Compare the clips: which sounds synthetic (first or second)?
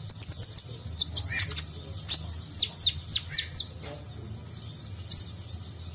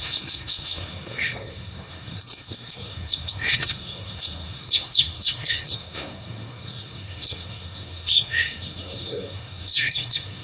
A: second